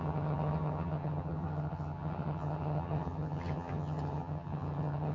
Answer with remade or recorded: remade